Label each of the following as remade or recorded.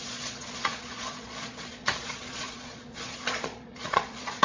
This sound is remade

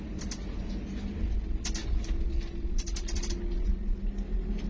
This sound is recorded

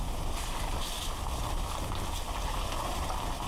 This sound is recorded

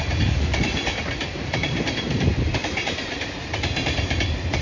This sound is remade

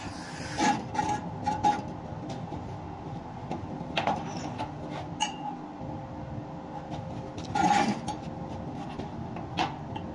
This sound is recorded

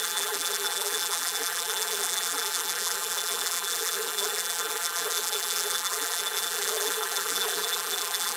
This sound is remade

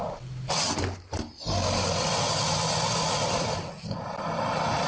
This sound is recorded